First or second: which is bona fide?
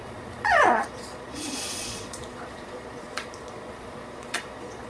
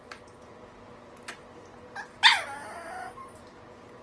second